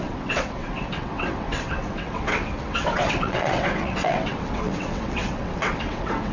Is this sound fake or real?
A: fake